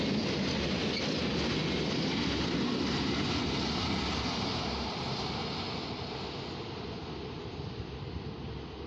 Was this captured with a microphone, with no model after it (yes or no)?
yes